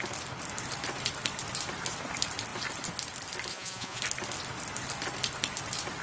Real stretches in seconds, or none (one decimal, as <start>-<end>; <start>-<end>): 0.0-3.5; 4.0-6.0